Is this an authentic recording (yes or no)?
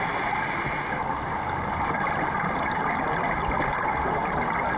yes